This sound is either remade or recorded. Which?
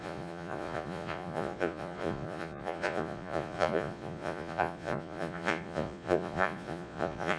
remade